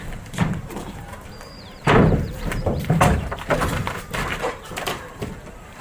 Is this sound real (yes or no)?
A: no